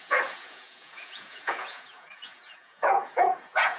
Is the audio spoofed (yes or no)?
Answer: yes